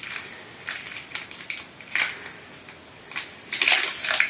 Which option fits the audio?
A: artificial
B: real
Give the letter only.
B